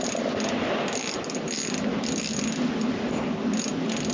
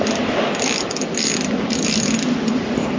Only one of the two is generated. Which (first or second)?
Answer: second